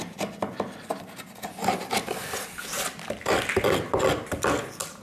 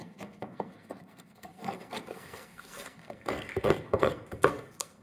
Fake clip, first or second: second